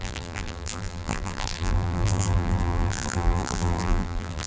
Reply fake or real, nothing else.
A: fake